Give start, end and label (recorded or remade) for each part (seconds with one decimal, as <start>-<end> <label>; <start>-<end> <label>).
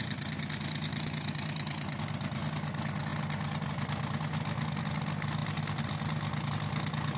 0.0-7.2 recorded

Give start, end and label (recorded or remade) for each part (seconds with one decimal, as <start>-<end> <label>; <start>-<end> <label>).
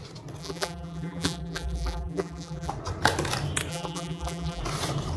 0.0-0.4 recorded; 0.4-2.7 remade; 2.7-3.7 recorded; 3.7-4.6 remade; 4.6-5.2 recorded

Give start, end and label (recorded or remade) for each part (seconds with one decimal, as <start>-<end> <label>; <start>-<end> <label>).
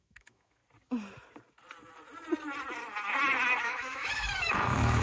0.0-0.6 remade; 0.6-3.6 recorded; 3.6-5.0 remade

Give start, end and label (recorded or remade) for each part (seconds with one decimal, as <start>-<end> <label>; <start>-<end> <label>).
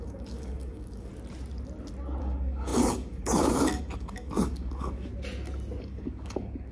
0.0-1.1 remade; 1.1-2.2 recorded; 2.2-5.1 remade; 5.1-5.8 recorded; 5.8-6.7 remade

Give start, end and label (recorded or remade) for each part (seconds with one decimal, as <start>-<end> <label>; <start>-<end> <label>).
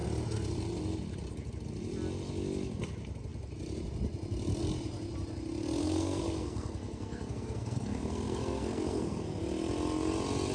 0.0-5.8 recorded; 5.8-9.4 remade; 9.4-10.5 recorded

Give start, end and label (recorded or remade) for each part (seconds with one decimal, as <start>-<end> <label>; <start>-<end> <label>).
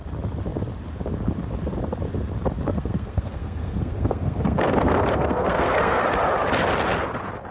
0.0-2.7 recorded; 2.7-6.0 remade; 6.0-7.5 recorded